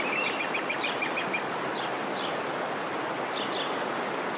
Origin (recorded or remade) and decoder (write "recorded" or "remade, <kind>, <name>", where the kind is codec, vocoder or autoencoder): recorded